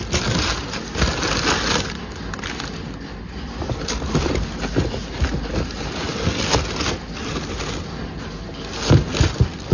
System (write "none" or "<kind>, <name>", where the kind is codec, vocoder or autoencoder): none